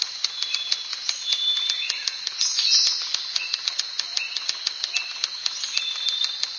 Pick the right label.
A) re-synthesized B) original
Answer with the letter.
B